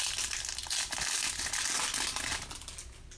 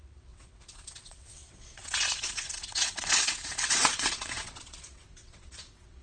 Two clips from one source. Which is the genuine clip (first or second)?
first